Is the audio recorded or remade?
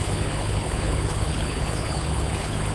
remade